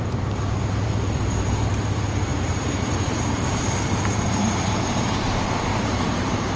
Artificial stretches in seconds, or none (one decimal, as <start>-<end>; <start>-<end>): 0.0-6.6